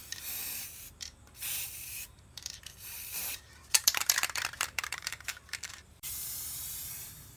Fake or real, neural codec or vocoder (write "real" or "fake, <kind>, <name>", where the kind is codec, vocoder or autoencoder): fake, vocoder, BigVGAN v2